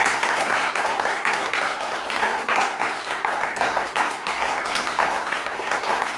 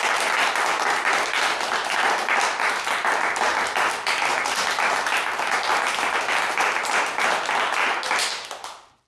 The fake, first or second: first